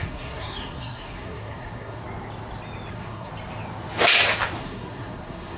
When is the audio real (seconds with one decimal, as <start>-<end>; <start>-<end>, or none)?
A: 2.0-2.9; 3.3-4.6

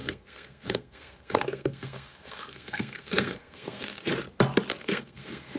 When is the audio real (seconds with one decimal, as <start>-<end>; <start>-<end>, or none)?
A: 4.1-4.8

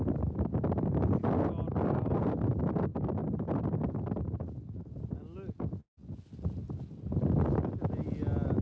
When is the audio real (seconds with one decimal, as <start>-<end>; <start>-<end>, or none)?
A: 0.0-8.6

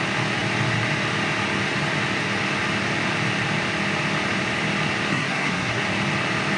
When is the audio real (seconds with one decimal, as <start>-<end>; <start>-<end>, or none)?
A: 0.0-5.1; 5.8-6.6

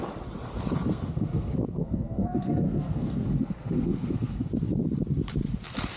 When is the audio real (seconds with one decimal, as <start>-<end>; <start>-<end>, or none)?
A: 0.0-0.9; 4.5-6.0